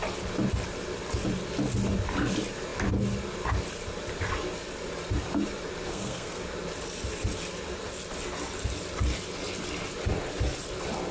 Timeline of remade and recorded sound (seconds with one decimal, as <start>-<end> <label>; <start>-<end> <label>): 0.0-5.9 recorded; 5.9-6.4 remade; 6.4-11.1 recorded